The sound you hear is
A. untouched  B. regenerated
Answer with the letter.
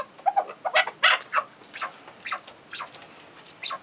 A